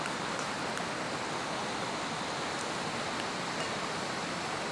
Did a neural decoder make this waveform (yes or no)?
no